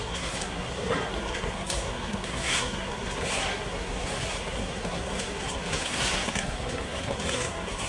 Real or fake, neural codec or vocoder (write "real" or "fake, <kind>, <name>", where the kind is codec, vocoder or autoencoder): fake, codec, SNAC